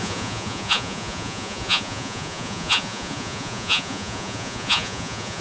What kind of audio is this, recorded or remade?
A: remade